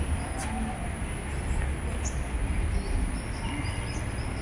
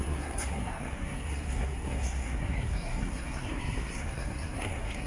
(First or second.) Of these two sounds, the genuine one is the first